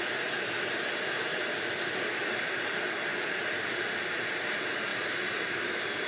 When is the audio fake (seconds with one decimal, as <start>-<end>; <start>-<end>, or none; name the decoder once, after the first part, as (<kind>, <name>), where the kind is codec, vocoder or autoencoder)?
1.3-2.1 (vocoder, BigVGAN v2); 3.1-3.7; 4.9-6.1

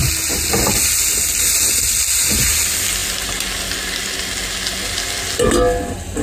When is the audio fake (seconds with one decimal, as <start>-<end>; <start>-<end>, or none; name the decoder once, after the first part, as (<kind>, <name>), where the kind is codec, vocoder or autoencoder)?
none

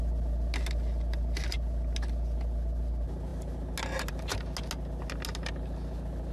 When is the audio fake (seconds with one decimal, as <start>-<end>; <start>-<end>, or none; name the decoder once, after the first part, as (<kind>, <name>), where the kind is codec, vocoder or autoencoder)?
none

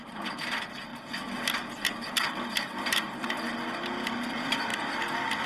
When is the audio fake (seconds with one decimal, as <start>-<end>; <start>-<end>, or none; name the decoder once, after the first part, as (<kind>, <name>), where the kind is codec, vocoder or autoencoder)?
0.0-0.9 (vocoder, BigVGAN v2); 4.2-4.7

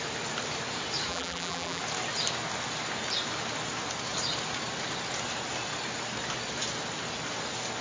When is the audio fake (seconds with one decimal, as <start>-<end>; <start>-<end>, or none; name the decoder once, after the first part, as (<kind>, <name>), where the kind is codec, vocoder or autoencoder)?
1.1-1.8 (vocoder, BigVGAN v2)